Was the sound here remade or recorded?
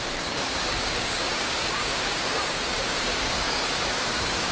remade